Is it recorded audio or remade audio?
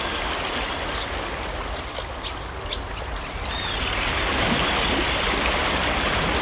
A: recorded